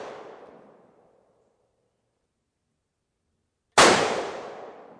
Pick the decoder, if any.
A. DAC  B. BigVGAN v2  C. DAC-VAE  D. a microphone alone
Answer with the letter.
D